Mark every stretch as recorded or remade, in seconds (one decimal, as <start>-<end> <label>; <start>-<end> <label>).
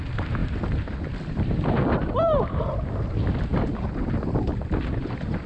0.0-0.4 recorded; 0.4-2.4 remade; 2.4-5.5 recorded